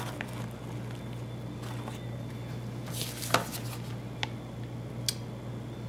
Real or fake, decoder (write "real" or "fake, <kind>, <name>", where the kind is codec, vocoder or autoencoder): real